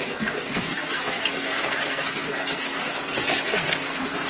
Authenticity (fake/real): fake